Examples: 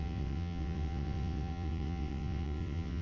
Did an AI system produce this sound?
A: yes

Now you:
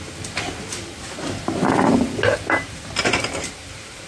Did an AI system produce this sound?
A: no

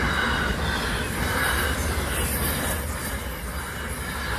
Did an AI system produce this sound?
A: no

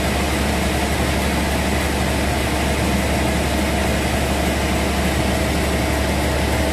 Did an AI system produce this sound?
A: no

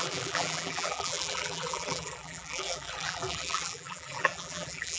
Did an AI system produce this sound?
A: yes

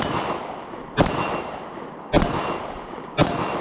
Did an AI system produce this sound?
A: no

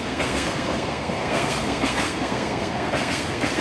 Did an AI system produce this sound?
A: yes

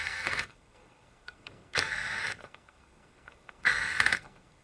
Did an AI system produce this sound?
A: yes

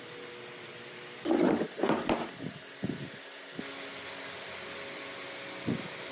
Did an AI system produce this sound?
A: no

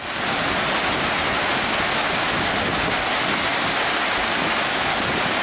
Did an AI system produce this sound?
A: no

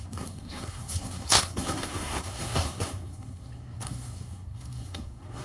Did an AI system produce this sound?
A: yes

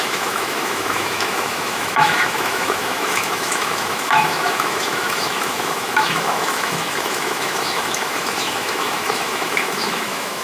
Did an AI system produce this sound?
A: yes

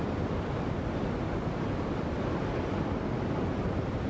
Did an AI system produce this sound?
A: no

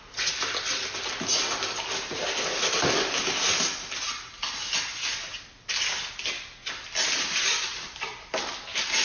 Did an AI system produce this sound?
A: no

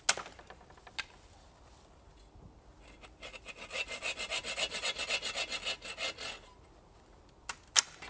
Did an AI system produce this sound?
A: no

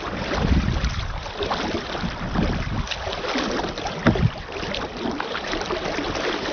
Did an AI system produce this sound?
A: no